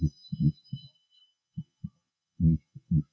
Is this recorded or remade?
remade